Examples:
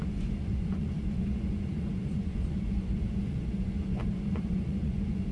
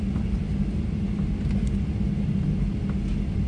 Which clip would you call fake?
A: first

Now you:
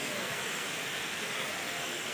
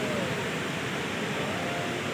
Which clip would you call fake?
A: first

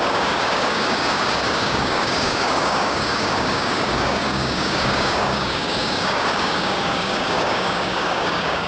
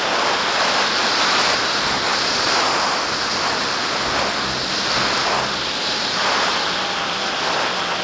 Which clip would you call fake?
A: first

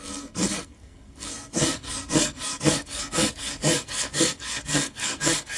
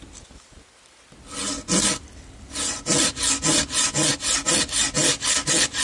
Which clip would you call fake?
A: first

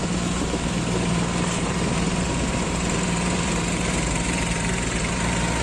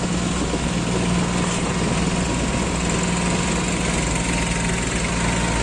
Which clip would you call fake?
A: first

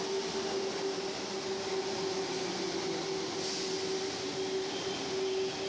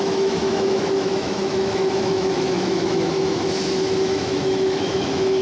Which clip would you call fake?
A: second